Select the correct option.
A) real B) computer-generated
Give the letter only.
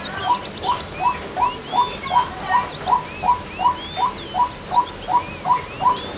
A